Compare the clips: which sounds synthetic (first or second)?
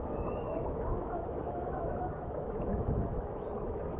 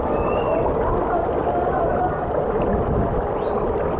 first